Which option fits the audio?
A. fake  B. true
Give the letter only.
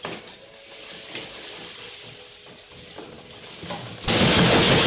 B